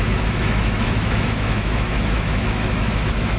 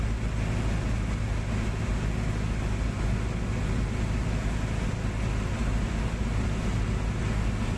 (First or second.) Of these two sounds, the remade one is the first